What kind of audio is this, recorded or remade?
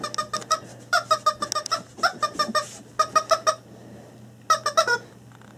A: recorded